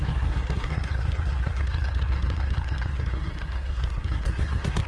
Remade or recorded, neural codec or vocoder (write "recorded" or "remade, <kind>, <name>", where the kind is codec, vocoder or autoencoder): remade, codec, SNAC